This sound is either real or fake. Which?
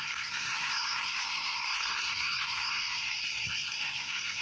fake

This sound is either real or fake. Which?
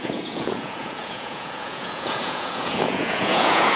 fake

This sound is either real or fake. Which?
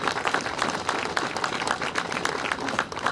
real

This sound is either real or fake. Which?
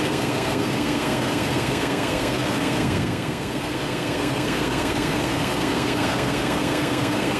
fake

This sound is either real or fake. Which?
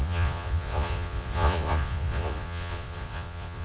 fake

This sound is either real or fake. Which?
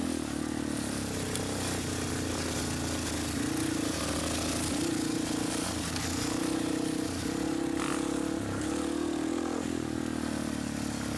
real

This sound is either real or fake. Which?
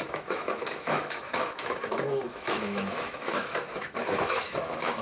fake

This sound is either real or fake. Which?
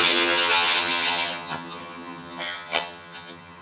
fake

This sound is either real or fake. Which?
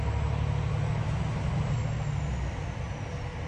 real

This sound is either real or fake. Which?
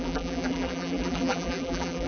fake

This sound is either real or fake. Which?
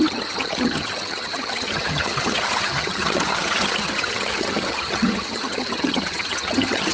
fake